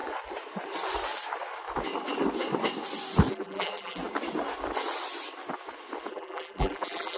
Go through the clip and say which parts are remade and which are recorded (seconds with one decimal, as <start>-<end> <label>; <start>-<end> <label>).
0.0-3.3 recorded; 3.3-4.0 remade; 4.0-6.1 recorded; 6.1-7.2 remade